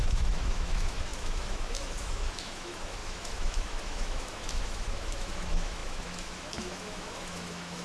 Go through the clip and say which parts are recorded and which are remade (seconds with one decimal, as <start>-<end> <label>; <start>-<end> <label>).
0.0-7.8 remade